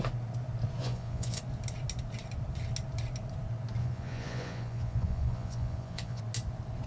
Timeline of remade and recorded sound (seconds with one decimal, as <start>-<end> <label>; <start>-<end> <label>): 0.0-0.8 recorded; 0.8-1.4 remade; 1.4-3.8 recorded; 3.8-6.2 remade; 6.2-6.9 recorded